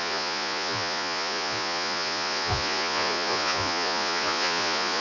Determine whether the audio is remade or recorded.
remade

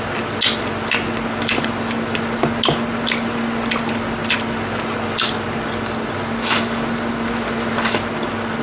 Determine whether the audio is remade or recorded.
recorded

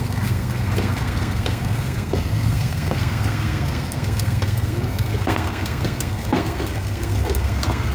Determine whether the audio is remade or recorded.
remade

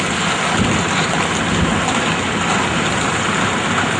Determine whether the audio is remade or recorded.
recorded